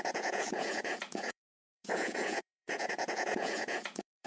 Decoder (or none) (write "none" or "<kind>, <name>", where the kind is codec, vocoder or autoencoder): vocoder, Vocos